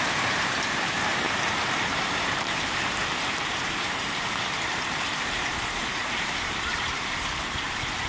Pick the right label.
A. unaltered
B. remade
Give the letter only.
B